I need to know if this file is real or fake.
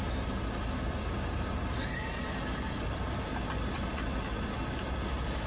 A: real